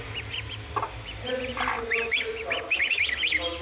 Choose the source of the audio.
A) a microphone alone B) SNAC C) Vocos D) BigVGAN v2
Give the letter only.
A